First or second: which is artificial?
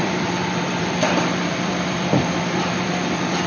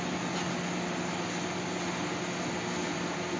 first